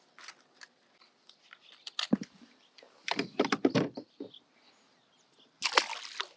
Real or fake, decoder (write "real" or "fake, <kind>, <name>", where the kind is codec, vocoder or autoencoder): real